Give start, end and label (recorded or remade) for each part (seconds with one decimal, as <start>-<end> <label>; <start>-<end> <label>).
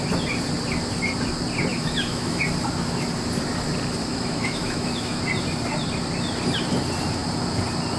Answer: 0.0-1.7 recorded; 1.7-2.4 remade; 2.4-4.0 recorded; 4.0-5.2 remade; 5.2-8.0 recorded